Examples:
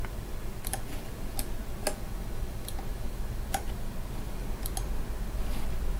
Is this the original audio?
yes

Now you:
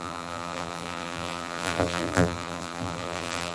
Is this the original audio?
no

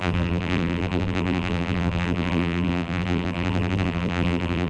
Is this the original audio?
no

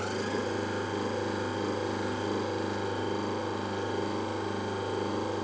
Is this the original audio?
yes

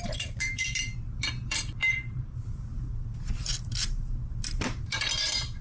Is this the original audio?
no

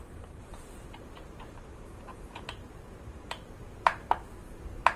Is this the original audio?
no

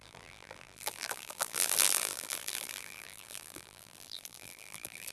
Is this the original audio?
no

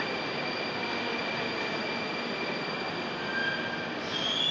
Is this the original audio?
yes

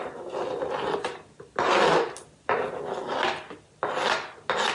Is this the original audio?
yes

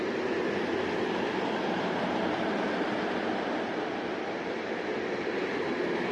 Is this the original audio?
yes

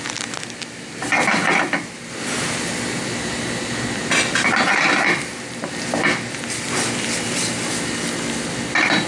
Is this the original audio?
yes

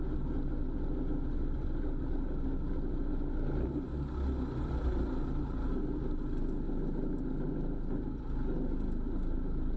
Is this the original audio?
yes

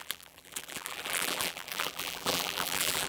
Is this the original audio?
no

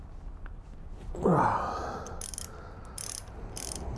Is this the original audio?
yes